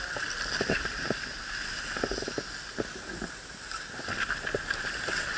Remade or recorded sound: recorded